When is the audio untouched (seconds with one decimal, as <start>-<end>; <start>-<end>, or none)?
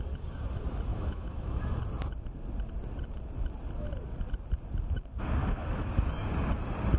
0.0-0.9; 1.8-5.4; 5.9-7.0